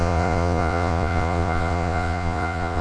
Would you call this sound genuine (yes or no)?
no